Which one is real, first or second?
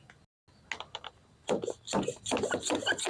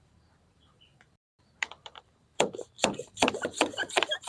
first